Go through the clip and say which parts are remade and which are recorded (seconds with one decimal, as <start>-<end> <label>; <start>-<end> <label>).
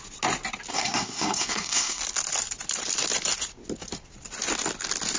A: 0.0-0.7 recorded; 0.7-2.0 remade; 2.0-5.2 recorded